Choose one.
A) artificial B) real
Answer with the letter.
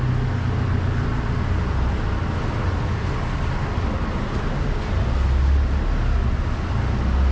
B